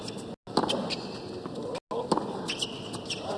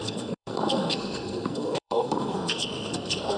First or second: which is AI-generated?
second